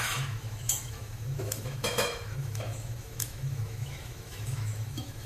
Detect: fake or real fake